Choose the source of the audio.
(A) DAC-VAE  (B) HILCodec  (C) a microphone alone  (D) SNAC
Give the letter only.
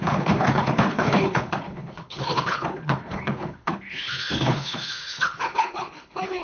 B